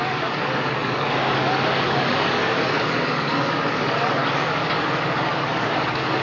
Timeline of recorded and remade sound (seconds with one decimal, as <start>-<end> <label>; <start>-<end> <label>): 0.0-6.2 remade